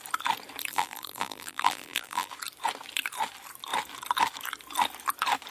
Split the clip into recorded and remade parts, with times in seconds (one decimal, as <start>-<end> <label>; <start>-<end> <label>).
0.0-0.7 recorded; 0.7-2.3 remade; 2.3-5.5 recorded